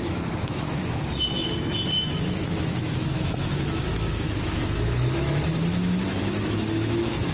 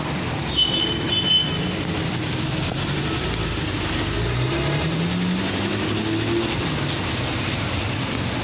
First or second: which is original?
second